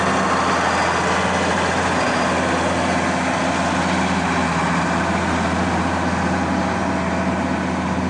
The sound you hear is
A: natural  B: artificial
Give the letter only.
A